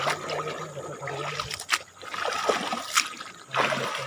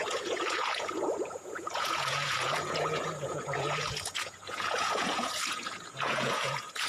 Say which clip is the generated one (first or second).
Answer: second